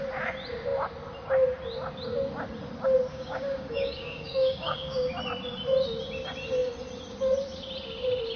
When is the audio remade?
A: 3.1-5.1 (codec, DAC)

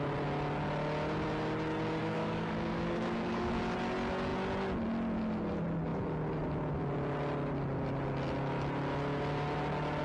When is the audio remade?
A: 2.0-3.6 (codec, DAC)

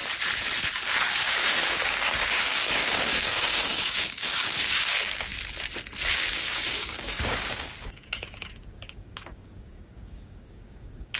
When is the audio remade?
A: 1.0-5.3 (codec, DAC); 6.1-11.2

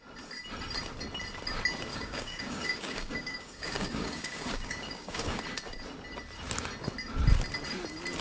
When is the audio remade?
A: 1.9-5.4 (codec, DAC)

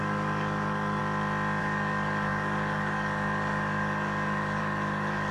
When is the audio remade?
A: 0.0-1.0 (codec, DAC); 1.6-5.3